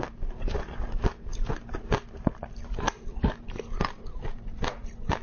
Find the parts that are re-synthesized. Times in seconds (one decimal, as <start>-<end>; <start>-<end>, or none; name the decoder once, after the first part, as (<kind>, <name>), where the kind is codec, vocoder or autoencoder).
none